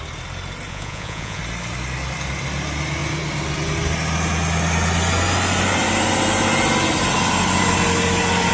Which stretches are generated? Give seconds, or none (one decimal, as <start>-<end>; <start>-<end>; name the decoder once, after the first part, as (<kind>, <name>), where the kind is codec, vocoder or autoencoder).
0.7-1.4 (vocoder, Vocos)